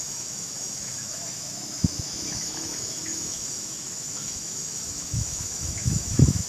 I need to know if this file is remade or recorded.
remade